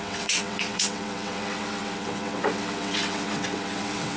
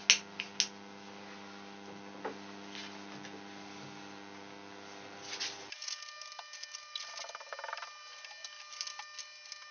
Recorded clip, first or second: second